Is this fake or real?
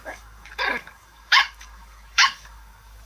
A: fake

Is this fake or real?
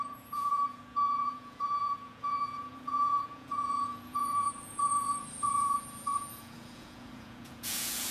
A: fake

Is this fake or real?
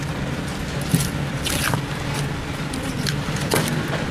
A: real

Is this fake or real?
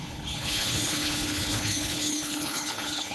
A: fake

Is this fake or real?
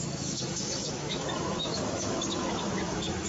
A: fake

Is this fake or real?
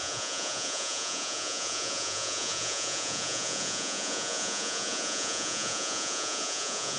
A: fake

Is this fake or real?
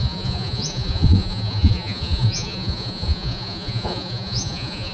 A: fake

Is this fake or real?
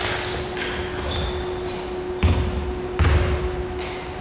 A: real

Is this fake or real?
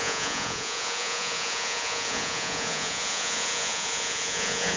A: fake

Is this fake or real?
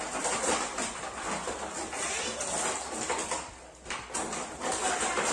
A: real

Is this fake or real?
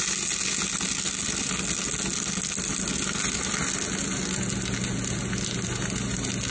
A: real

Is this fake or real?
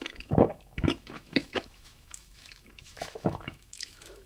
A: fake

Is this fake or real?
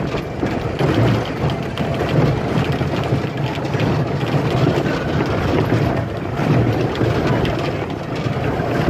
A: real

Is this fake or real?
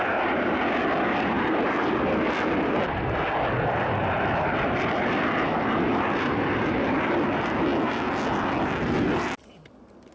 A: real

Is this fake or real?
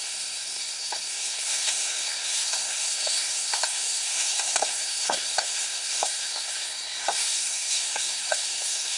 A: fake